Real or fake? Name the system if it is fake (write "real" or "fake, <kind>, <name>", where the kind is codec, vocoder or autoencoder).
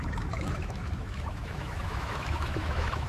fake, autoencoder, DAC-VAE